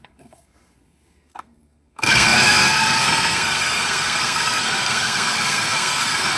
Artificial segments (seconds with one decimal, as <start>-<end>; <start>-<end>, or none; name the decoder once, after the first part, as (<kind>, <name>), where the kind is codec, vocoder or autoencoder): 0.0-6.4 (codec, SNAC)